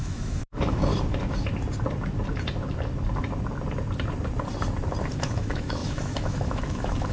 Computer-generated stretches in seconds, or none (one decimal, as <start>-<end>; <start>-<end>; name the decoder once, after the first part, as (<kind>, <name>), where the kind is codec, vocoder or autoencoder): 0.0-0.9 (autoencoder, DAC-VAE); 5.2-7.1